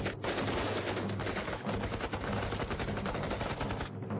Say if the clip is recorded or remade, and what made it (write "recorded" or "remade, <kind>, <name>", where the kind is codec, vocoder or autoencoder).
recorded